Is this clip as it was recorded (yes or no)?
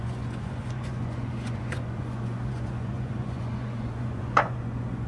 no